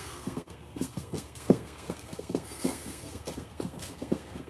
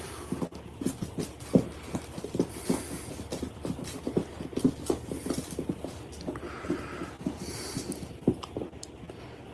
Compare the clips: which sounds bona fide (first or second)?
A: second